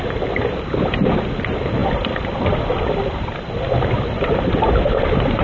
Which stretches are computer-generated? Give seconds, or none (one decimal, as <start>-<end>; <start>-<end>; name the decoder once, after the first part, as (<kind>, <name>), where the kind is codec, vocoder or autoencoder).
none